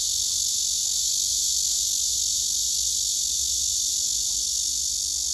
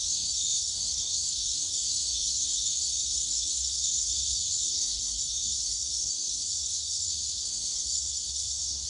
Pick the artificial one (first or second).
second